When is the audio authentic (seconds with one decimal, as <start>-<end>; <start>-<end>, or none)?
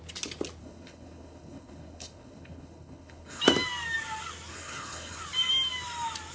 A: 0.0-0.6; 3.4-4.5; 5.2-6.3